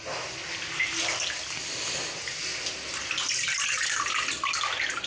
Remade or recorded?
recorded